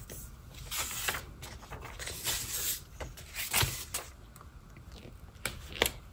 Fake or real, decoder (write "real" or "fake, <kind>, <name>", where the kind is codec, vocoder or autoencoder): real